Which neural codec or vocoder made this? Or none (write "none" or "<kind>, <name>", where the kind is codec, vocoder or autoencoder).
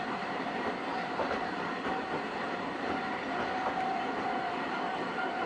vocoder, BigVGAN v2